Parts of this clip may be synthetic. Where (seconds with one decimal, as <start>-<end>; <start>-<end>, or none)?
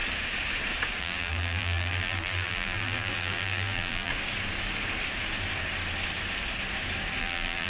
1.0-4.1; 7.2-7.7